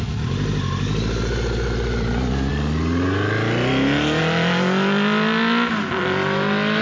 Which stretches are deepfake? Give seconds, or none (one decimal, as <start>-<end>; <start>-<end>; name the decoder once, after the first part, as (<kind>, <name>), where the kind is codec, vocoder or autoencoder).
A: none